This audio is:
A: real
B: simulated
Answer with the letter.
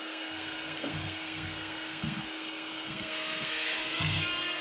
B